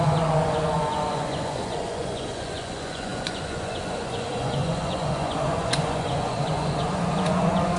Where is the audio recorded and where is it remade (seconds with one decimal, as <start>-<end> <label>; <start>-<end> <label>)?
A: 0.0-7.8 remade